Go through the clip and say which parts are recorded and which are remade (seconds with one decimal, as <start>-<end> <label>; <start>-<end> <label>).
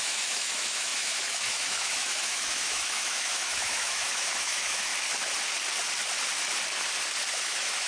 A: 0.0-4.9 remade; 4.9-7.3 recorded; 7.3-7.9 remade